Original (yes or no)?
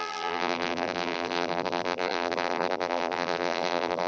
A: no